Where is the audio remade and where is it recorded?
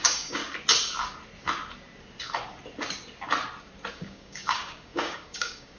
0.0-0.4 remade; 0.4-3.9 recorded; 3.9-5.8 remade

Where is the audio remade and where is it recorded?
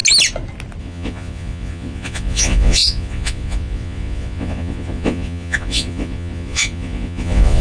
0.0-0.8 recorded; 0.8-7.6 remade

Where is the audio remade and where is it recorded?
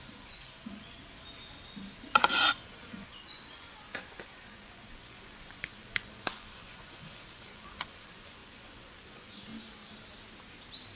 0.0-1.0 remade; 1.0-2.1 recorded; 2.1-9.5 remade; 9.5-11.0 recorded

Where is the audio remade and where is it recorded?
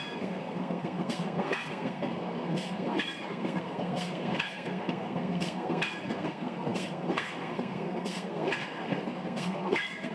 0.0-10.1 remade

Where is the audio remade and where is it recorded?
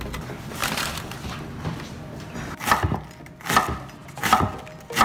0.0-0.6 recorded; 0.6-2.2 remade; 2.2-5.0 recorded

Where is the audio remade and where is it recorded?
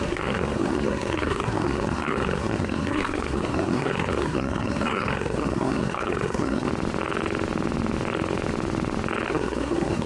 0.0-6.7 remade; 6.7-9.3 recorded; 9.3-10.1 remade